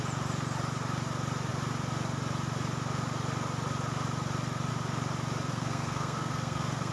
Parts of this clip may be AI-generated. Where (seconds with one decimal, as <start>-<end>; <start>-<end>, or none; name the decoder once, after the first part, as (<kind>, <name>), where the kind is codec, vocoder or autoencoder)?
5.5-6.9 (codec, SNAC)